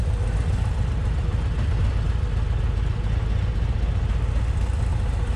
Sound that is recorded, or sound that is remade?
recorded